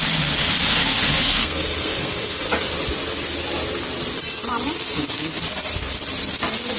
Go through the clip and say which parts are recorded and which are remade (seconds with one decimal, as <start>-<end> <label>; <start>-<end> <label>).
0.0-0.7 recorded; 0.7-2.4 remade; 2.4-6.8 recorded